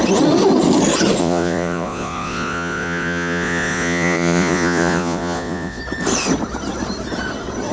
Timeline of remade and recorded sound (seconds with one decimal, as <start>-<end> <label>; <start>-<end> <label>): 0.0-1.2 recorded; 1.2-5.8 remade; 5.8-7.7 recorded